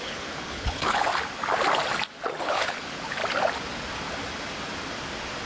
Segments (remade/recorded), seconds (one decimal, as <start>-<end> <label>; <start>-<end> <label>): 0.0-1.1 remade; 1.1-2.4 recorded; 2.4-3.2 remade; 3.2-5.5 recorded